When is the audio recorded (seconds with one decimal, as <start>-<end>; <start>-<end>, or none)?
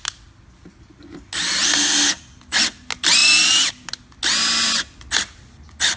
0.0-6.0